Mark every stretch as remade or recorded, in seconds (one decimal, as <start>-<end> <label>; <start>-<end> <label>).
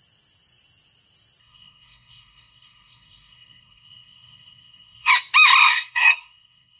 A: 0.0-1.4 recorded; 1.4-5.1 remade; 5.1-5.6 recorded; 5.6-6.8 remade